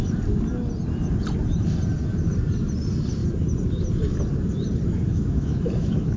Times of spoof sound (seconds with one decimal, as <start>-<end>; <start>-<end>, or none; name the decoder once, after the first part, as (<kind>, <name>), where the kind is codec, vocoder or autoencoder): 5.1-6.2 (autoencoder, DAC-VAE)